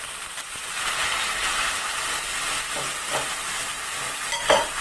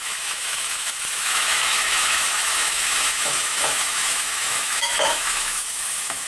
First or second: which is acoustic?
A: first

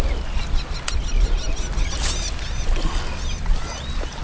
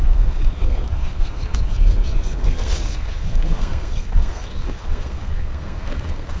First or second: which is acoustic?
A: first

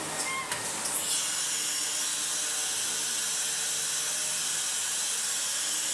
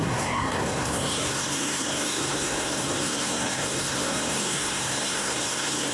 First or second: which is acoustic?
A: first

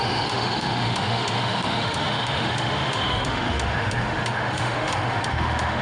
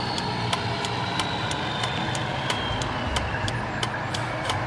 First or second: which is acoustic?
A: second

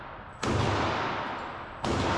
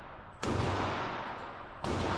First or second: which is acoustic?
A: first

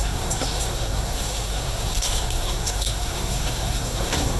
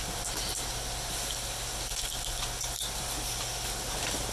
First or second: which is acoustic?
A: second